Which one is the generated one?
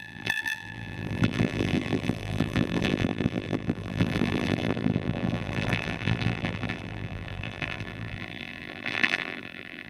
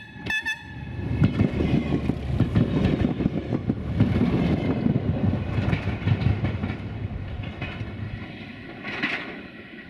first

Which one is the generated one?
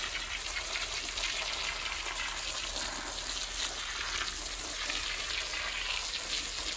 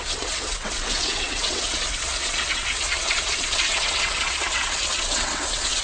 second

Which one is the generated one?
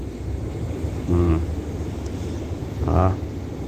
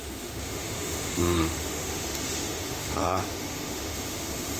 second